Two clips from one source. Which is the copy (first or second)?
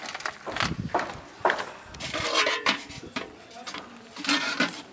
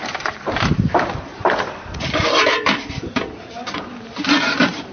second